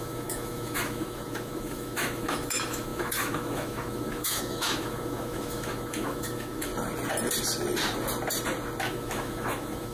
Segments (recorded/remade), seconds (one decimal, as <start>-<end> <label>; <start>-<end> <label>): 0.0-6.7 remade; 6.7-8.8 recorded; 8.8-9.9 remade